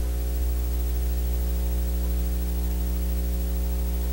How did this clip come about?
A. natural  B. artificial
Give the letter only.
A